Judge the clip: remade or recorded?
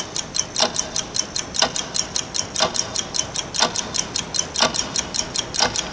recorded